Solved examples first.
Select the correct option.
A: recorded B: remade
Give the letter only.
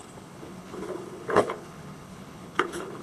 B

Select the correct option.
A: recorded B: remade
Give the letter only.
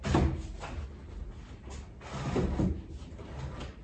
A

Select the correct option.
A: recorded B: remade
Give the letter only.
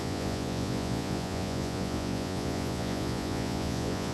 B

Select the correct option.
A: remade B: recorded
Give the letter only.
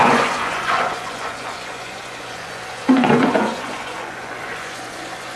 A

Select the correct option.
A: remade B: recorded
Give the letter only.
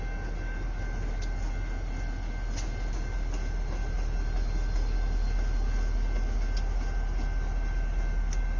B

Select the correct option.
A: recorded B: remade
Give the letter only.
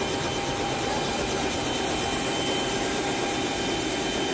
A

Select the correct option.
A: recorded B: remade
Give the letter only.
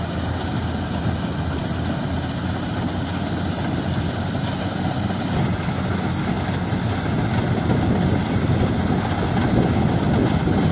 A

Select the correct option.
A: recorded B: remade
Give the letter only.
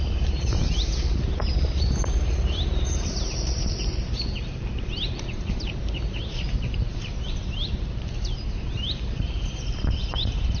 B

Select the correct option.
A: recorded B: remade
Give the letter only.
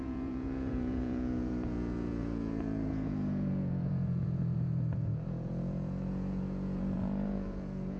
B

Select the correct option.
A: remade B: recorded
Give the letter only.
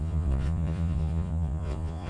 A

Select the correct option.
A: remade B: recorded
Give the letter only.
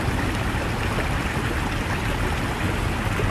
B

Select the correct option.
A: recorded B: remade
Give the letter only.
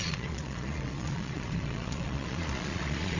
B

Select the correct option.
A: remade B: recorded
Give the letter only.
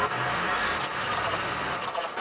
A